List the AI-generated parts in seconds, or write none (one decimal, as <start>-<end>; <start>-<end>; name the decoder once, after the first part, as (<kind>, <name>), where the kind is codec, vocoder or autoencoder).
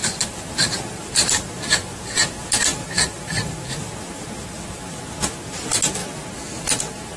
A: 0.0-0.7 (vocoder, BigVGAN v2); 2.7-3.7